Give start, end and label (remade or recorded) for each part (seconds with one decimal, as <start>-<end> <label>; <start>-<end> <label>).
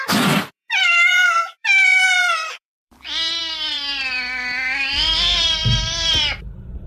0.0-5.6 remade; 5.6-6.9 recorded